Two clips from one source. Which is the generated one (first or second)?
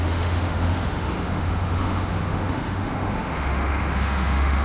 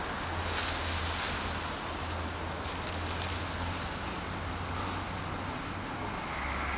first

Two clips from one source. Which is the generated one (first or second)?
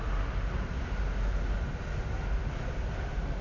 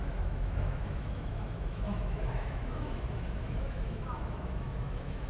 second